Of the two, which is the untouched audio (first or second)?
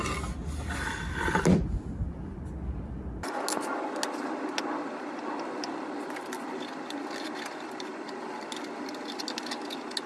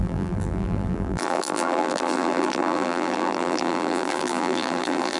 first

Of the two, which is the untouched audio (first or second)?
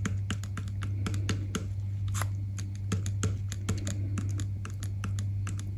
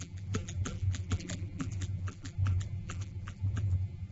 first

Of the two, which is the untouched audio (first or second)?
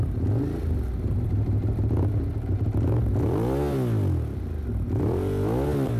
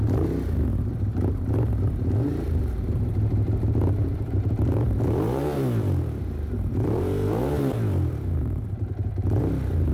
first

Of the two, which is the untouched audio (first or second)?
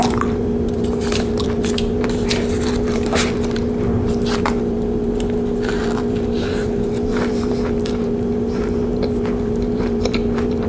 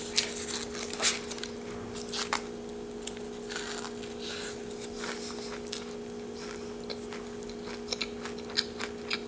second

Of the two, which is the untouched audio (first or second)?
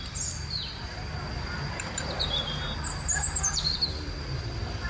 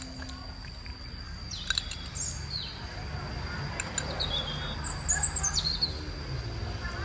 second